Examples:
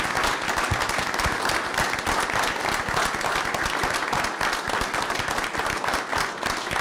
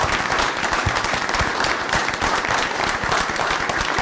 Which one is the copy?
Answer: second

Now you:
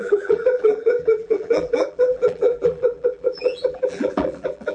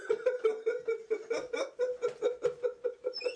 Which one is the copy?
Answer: first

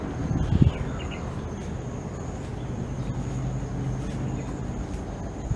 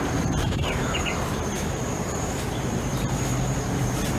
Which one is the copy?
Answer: second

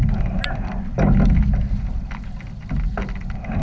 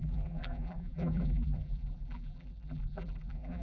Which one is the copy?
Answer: second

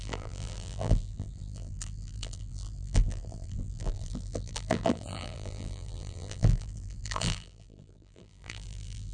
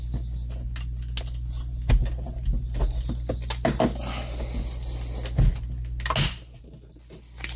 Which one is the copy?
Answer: first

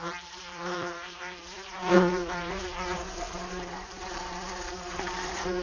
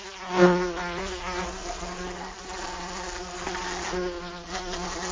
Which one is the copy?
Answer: first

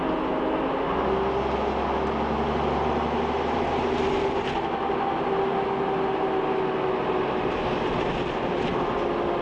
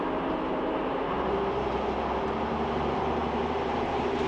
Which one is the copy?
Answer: second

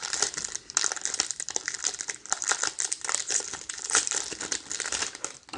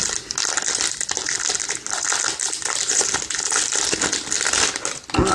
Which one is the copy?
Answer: first